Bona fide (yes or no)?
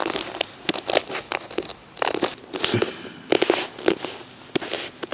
yes